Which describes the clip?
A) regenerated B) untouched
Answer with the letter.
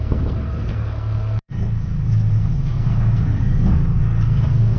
A